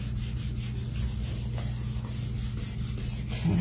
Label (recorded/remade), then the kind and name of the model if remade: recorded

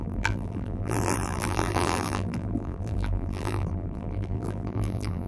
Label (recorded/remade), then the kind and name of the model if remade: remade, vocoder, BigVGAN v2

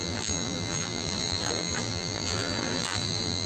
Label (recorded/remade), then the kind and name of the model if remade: remade, vocoder, BigVGAN v2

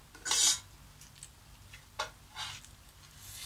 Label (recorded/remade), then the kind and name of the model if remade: recorded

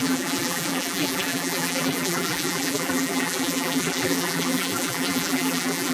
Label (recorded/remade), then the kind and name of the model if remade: remade, vocoder, BigVGAN v2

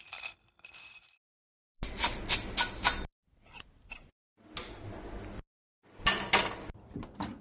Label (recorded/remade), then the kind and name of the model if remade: recorded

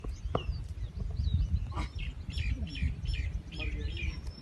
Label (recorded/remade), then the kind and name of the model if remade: recorded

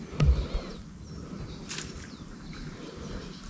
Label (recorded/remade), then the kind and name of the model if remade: recorded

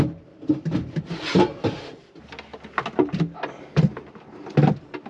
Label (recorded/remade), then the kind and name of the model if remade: recorded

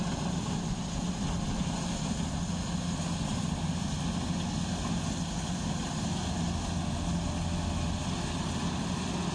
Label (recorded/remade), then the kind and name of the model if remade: recorded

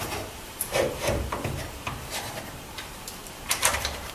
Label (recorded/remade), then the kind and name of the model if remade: remade, vocoder, BigVGAN v2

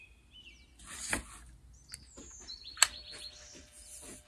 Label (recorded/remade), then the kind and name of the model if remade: recorded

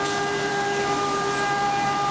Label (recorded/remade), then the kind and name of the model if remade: remade, vocoder, BigVGAN v2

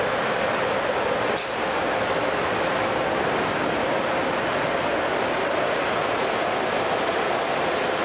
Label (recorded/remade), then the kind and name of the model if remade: recorded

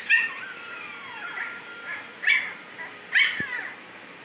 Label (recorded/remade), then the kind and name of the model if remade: recorded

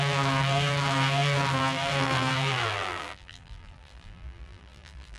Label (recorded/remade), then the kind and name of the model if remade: remade, vocoder, BigVGAN v2